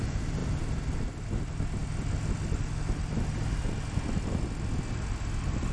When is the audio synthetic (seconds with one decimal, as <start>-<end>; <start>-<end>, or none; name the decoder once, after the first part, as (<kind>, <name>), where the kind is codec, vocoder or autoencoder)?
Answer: none